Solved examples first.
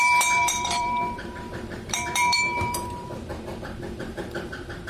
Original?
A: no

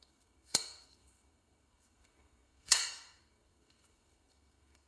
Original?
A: no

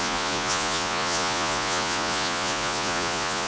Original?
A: no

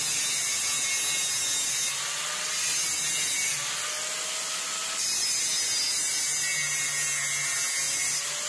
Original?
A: yes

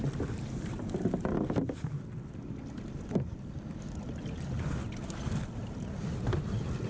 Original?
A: yes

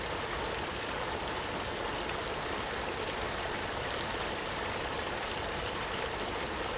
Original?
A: no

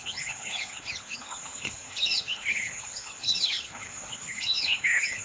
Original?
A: no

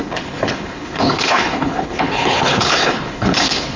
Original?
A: no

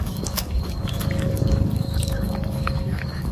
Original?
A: no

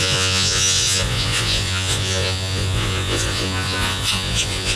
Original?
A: no